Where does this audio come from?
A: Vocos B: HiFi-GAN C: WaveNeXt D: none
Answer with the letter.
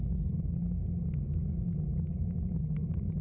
D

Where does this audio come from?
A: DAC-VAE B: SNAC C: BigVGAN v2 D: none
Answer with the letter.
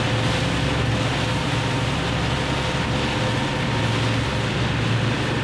D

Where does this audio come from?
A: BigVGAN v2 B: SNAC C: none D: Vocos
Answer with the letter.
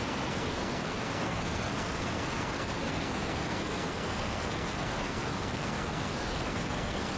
B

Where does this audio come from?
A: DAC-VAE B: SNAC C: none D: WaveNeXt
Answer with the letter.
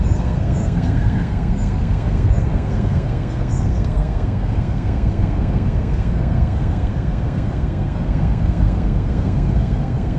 B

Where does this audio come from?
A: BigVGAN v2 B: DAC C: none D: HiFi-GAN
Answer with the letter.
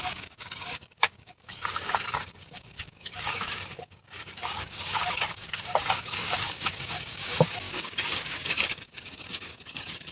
B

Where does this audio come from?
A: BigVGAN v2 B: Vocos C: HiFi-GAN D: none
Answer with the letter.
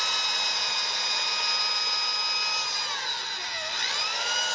D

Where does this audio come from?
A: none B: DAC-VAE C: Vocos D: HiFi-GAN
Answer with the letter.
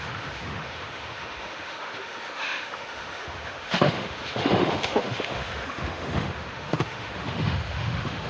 B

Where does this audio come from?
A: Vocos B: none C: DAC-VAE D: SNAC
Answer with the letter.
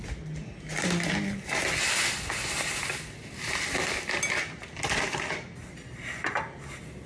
B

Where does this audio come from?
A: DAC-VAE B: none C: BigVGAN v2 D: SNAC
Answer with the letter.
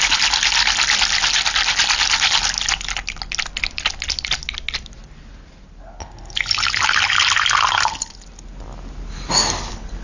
B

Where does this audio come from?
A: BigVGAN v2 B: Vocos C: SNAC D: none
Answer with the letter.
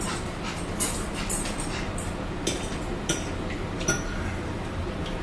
A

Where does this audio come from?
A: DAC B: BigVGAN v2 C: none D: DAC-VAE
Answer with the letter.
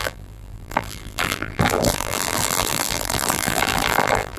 B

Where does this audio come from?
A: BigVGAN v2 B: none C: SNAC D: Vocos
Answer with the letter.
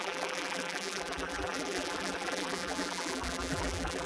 A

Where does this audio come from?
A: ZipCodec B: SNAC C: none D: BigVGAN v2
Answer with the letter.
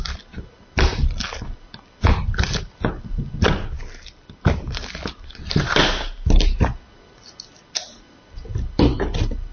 C